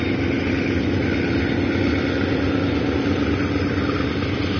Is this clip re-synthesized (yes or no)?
no